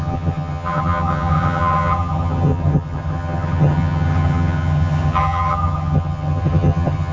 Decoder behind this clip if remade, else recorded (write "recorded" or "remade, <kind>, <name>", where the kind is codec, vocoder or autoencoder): remade, vocoder, HiFi-GAN